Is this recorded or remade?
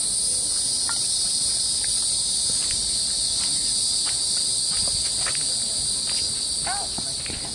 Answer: recorded